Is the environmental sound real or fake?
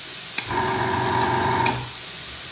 fake